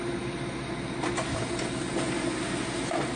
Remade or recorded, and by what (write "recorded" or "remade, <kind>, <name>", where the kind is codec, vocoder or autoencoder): recorded